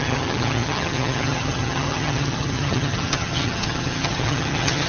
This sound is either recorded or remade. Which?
remade